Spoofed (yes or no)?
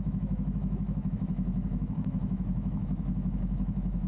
yes